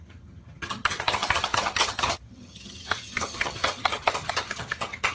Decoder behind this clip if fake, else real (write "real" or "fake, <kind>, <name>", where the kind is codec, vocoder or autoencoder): fake, vocoder, HiFi-GAN